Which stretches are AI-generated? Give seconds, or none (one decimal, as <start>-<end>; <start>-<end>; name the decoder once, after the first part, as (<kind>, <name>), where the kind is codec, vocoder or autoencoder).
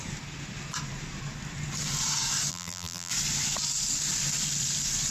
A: 2.5-3.1 (vocoder, BigVGAN v2)